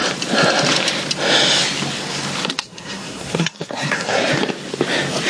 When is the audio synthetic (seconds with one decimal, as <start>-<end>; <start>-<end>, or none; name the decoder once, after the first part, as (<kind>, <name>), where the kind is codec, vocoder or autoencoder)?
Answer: 2.6-4.3 (codec, SNAC)